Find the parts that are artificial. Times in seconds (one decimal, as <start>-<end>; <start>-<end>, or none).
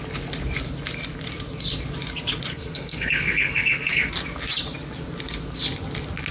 2.5-4.1